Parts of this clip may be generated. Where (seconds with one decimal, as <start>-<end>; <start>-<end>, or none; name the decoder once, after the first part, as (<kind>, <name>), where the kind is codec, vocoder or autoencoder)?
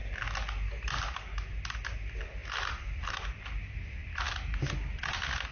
none